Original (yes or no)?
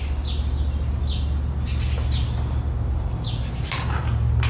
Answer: yes